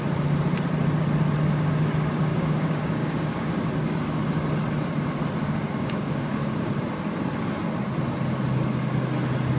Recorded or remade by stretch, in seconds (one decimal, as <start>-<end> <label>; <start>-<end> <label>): 0.0-2.3 recorded; 2.3-3.5 remade; 3.5-5.4 recorded; 5.4-6.7 remade; 6.7-9.6 recorded

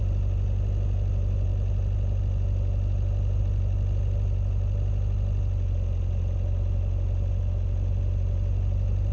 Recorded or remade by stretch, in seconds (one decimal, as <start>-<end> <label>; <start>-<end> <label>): 0.0-9.1 recorded

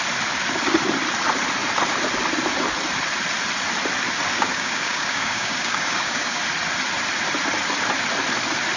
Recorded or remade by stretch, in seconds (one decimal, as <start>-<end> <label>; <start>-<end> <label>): 0.0-4.3 recorded; 4.3-6.4 remade; 6.4-8.8 recorded

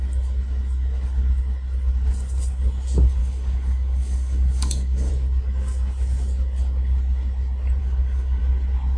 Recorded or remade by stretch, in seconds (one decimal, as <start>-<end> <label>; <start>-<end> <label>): 0.0-3.2 recorded; 3.2-5.1 remade; 5.1-7.8 recorded; 7.8-8.4 remade; 8.4-9.0 recorded

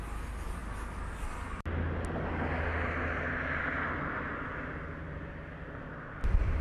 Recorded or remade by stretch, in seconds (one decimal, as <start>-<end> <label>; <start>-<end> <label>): 0.0-6.6 recorded